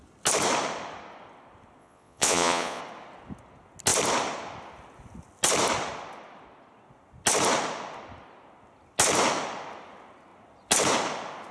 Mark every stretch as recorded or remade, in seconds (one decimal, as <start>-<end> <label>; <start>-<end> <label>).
0.0-1.8 recorded; 1.8-2.8 remade; 2.8-11.5 recorded